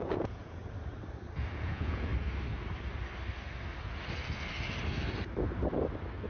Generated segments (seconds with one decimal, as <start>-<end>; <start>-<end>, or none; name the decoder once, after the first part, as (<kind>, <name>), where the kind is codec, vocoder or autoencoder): 0.0-0.6 (vocoder, Vocos); 1.5-2.1